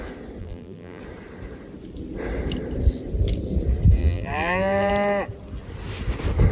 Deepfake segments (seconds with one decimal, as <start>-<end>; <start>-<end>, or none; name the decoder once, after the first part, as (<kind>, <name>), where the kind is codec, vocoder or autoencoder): 0.4-1.0 (vocoder, BigVGAN v2); 4.0-4.9